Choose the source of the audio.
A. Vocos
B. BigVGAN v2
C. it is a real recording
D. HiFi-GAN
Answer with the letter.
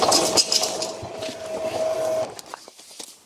C